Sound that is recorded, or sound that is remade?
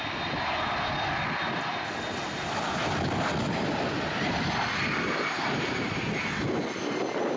recorded